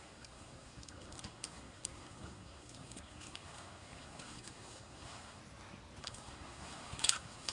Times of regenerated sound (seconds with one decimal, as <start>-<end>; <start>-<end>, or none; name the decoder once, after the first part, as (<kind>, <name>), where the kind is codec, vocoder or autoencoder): 0.0-5.4 (codec, SNAC); 6.0-7.5